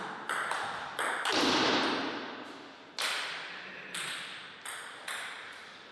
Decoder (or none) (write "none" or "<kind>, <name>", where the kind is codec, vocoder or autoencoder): none